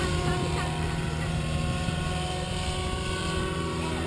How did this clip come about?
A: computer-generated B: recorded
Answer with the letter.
A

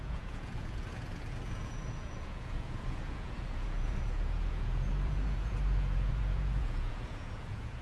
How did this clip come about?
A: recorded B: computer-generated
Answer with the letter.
B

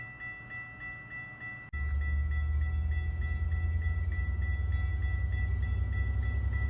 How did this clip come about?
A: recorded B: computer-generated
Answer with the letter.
A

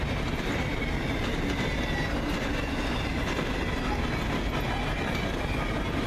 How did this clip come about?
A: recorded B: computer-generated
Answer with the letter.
A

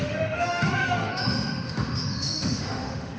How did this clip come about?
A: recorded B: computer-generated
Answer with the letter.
B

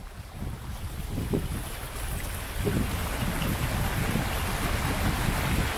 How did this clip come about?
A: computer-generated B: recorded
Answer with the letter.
B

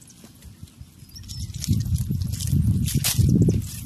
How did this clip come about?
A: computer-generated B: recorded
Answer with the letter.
B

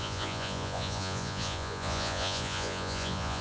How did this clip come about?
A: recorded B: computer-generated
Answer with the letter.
B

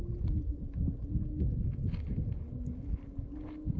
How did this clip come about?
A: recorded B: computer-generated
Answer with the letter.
A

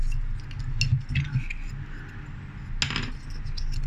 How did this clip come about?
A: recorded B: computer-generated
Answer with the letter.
A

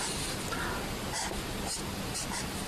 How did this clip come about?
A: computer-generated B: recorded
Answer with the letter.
B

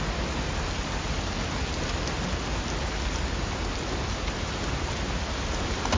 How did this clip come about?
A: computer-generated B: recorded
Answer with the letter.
B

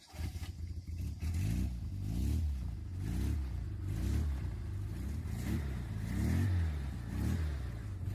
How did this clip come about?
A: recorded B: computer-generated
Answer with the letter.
A